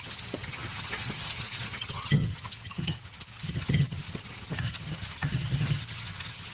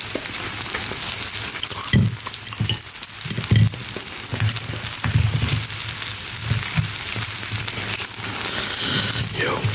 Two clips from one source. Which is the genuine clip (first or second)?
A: second